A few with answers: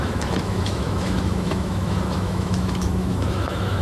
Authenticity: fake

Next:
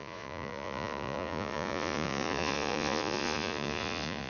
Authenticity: fake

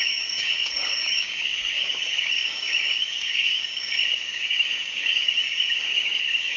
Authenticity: fake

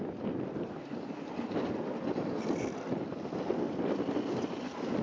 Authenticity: real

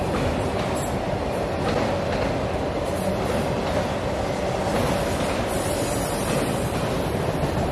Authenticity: real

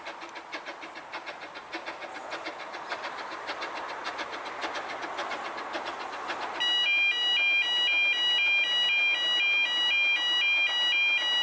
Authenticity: real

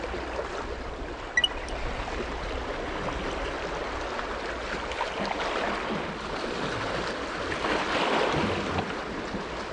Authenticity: real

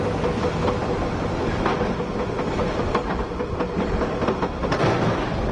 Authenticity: real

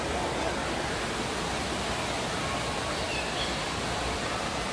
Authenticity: real